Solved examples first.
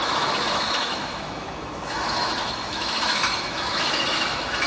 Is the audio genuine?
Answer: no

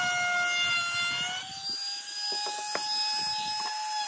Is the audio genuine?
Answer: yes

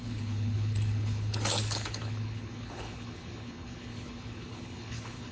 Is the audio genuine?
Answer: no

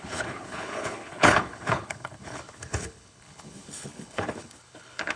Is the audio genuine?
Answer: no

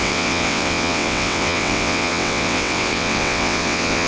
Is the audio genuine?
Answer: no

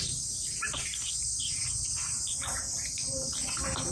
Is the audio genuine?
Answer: no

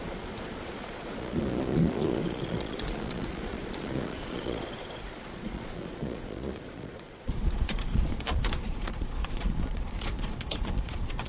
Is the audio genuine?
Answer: no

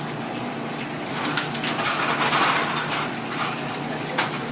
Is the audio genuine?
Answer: yes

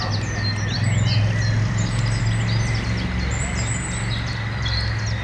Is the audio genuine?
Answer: yes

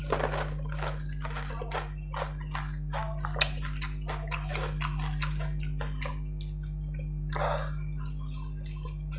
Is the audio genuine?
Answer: yes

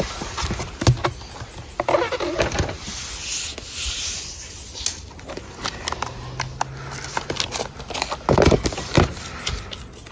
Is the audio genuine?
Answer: yes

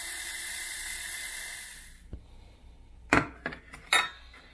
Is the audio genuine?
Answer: yes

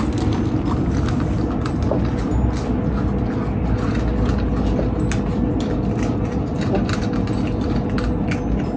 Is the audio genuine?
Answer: yes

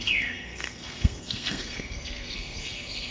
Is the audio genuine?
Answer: no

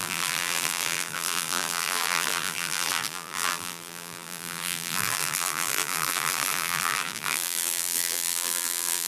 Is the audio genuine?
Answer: no